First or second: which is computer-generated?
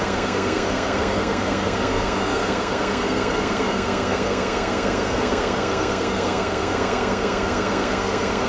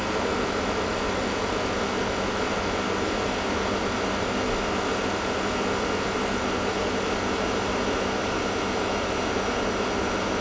first